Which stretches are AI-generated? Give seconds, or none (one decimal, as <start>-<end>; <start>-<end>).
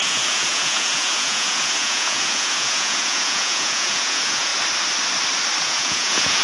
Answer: 0.0-4.5; 5.6-6.4